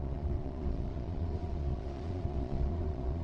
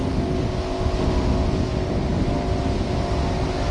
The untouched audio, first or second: second